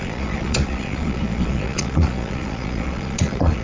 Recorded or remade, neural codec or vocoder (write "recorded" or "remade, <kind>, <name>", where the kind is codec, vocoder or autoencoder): remade, vocoder, Vocos